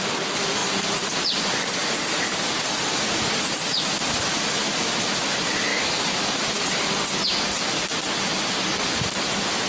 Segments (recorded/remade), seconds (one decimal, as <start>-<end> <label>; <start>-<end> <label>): 0.0-9.7 recorded